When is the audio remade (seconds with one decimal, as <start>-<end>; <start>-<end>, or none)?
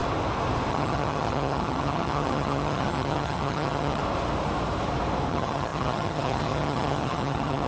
0.7-4.0; 5.3-7.7